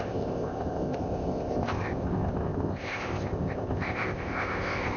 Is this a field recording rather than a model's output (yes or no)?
no